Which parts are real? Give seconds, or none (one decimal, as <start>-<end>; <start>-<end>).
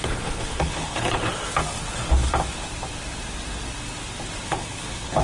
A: 1.3-4.4